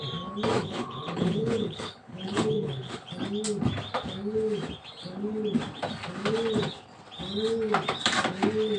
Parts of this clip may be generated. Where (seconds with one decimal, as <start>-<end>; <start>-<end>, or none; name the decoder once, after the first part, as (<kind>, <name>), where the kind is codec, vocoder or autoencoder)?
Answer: 0.6-3.1 (codec, HILCodec)